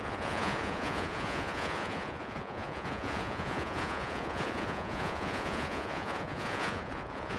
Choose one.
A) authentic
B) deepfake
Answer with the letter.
B